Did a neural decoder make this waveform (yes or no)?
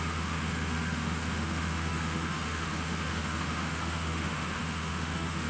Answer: yes